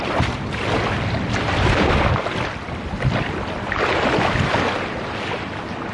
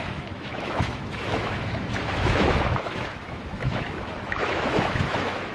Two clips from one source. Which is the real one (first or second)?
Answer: first